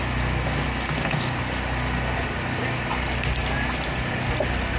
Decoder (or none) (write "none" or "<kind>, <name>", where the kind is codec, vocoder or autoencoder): none